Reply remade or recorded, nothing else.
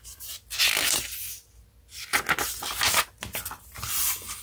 recorded